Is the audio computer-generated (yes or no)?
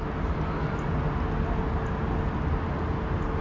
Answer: no